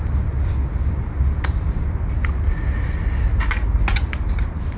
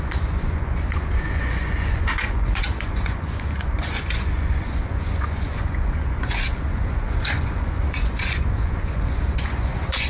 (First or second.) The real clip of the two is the first